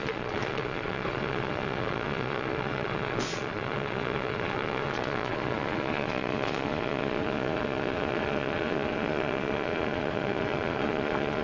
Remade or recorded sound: remade